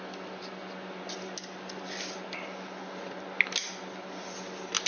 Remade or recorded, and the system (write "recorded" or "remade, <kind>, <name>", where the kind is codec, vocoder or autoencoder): recorded